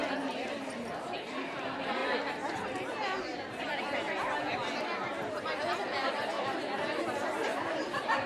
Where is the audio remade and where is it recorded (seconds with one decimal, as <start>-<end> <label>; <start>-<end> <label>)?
0.0-1.0 recorded; 1.0-2.0 remade; 2.0-6.1 recorded; 6.1-8.3 remade